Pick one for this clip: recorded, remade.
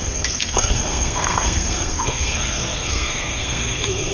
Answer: remade